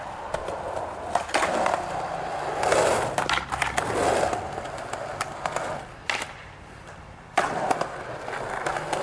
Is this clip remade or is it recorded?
recorded